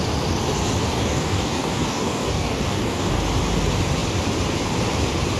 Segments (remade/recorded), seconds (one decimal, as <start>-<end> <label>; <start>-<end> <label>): 0.0-0.9 recorded; 0.9-3.2 remade; 3.2-5.4 recorded

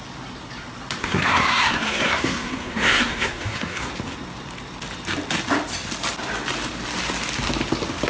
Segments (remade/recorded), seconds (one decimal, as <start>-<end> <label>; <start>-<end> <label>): 0.0-1.0 recorded; 1.0-3.9 remade; 3.9-8.1 recorded

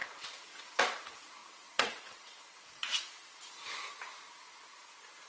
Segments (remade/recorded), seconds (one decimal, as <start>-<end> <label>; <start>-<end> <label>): 0.0-0.8 remade; 0.8-1.4 recorded; 1.4-3.5 remade; 3.5-5.3 recorded

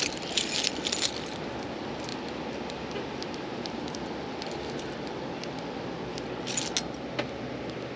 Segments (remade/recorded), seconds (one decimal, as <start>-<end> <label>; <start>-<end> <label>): 0.0-8.0 recorded

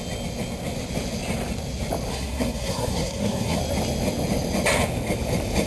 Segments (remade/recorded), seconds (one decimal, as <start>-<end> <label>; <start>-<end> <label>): 0.0-2.1 recorded; 2.1-3.6 remade; 3.6-5.7 recorded